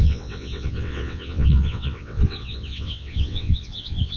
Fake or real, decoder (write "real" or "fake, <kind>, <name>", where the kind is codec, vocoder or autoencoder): fake, vocoder, WaveNeXt